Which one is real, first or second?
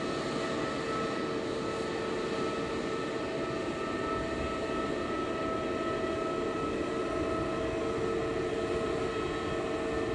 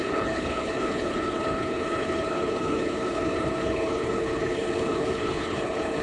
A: first